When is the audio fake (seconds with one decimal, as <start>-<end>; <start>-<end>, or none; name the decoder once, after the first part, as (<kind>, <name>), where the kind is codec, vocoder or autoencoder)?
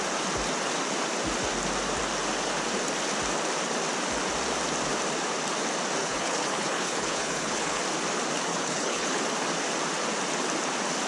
6.0-7.8 (codec, HILCodec); 8.5-9.2